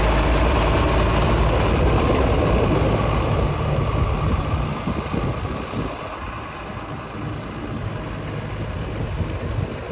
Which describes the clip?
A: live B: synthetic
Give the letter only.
A